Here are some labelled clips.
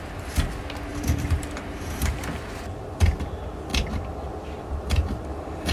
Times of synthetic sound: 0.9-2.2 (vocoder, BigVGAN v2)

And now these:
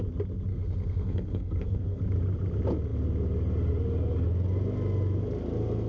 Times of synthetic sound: 0.5-2.0 (codec, SNAC)

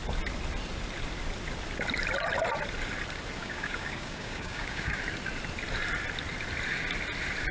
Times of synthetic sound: 3.4-5.0 (codec, DAC)

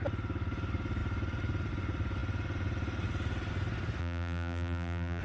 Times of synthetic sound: 4.0-5.2 (vocoder, BigVGAN v2)

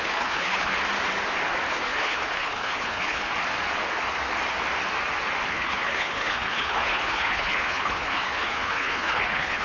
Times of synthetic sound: 0.0-0.7 (codec, HILCodec); 1.7-3.3; 5.5-9.6

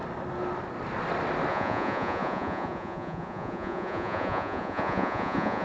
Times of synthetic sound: 1.5-5.6 (vocoder, Vocos)

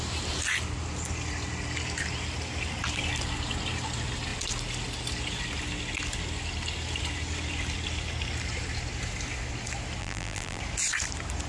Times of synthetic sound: 10.0-10.6 (vocoder, BigVGAN v2)